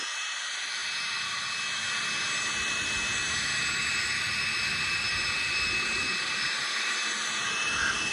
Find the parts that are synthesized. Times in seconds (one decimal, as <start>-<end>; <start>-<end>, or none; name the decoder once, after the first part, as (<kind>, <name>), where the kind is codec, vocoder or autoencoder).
3.8-8.1 (vocoder, BigVGAN v2)